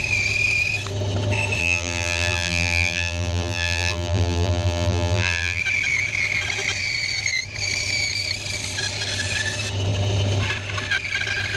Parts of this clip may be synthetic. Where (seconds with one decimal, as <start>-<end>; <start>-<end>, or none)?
1.6-5.6